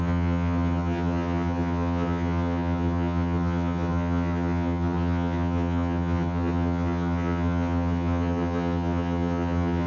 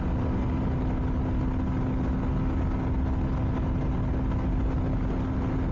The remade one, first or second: first